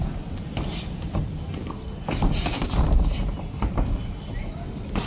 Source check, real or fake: real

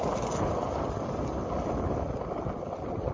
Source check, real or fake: real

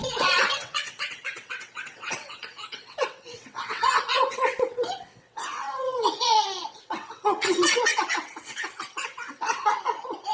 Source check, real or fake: fake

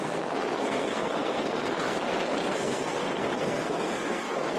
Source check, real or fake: fake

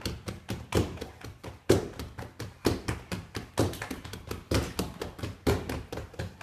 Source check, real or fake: real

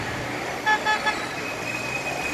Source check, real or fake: real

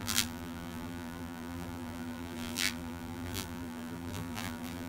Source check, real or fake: fake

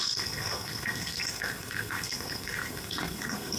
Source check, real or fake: fake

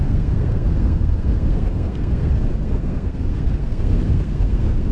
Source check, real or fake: fake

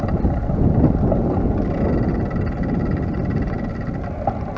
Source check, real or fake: real